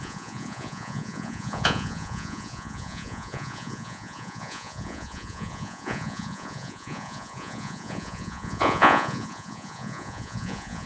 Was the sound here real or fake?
fake